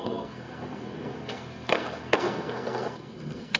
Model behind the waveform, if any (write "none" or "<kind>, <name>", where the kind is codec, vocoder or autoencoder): codec, SNAC